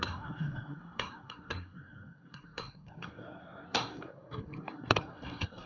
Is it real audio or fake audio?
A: fake